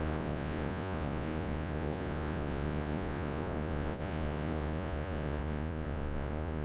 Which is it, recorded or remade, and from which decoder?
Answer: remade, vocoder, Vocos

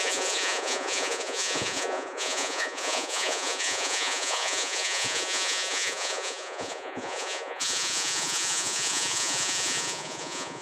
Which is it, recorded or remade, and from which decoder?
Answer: remade, vocoder, Vocos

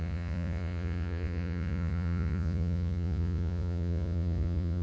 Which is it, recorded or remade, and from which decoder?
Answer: remade, vocoder, Vocos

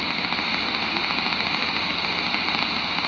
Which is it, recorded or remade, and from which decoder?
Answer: recorded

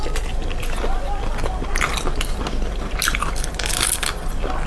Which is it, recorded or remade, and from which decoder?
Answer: recorded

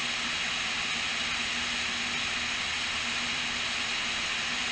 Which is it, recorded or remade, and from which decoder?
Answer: recorded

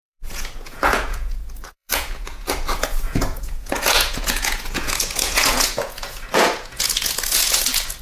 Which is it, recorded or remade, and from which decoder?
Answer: remade, vocoder, Vocos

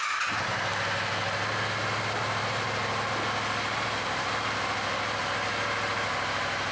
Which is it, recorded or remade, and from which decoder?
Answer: recorded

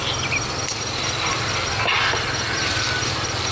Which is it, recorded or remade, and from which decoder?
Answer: recorded